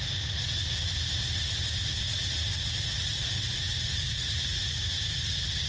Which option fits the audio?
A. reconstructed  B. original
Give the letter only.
B